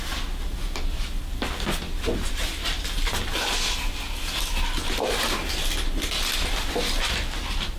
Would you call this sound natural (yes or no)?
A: yes